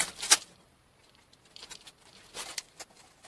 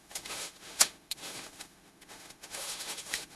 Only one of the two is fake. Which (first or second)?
second